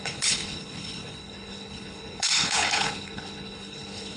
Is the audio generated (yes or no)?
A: yes